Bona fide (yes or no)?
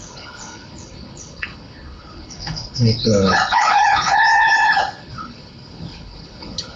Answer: no